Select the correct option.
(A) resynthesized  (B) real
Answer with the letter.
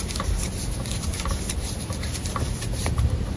A